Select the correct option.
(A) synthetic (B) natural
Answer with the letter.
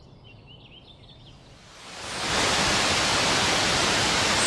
B